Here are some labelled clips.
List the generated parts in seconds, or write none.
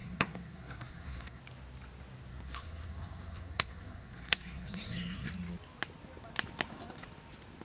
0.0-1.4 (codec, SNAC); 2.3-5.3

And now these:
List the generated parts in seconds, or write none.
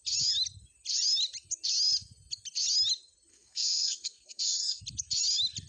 3.3-4.8 (codec, SNAC)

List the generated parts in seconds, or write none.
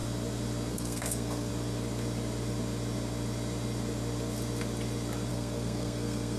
0.7-1.5 (codec, SNAC); 5.3-6.4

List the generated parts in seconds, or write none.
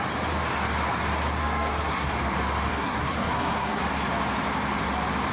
1.4-2.1 (codec, SNAC); 2.7-3.8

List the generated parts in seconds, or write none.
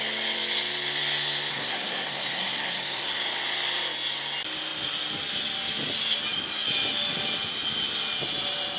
1.5-3.2 (codec, SNAC)